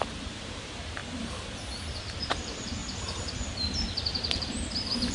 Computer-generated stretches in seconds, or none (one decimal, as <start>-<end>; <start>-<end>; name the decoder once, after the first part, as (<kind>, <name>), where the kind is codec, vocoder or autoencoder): 0.0-1.0 (vocoder, BigVGAN v2); 2.0-2.8; 3.8-5.1